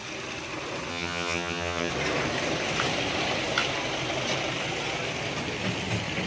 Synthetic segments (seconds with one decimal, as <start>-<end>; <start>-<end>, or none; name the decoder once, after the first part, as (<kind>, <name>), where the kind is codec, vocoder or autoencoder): 0.9-1.9 (vocoder, HiFi-GAN)